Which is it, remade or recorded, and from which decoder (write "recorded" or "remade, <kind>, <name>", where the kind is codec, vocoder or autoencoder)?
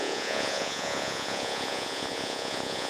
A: remade, vocoder, Vocos